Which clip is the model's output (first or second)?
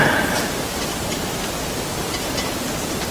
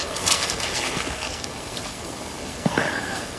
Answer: second